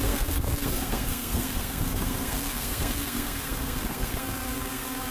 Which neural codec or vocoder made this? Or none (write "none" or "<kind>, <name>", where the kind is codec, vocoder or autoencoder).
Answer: codec, SNAC